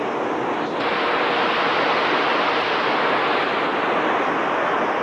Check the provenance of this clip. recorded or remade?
recorded